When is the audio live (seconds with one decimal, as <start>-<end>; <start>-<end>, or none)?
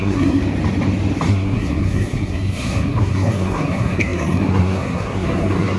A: 0.4-1.3